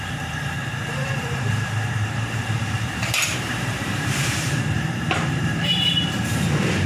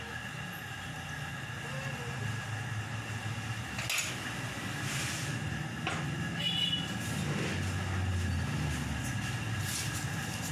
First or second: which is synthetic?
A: first